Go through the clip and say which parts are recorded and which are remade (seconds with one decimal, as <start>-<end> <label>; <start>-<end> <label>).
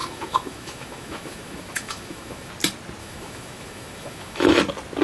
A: 0.0-2.5 remade; 2.5-3.0 recorded; 3.0-4.6 remade; 4.6-5.0 recorded